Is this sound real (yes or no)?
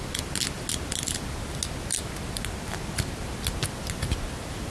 yes